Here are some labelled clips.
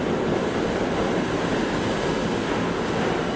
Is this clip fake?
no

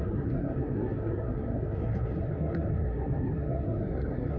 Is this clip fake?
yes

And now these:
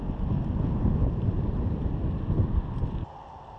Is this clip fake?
no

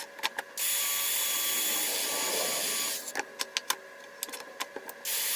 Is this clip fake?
no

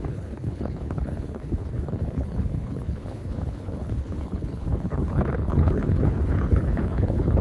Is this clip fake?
yes